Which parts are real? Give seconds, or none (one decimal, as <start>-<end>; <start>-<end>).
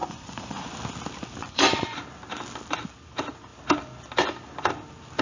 0.6-1.4; 2.0-5.2